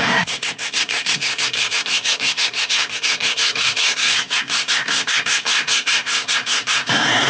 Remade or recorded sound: remade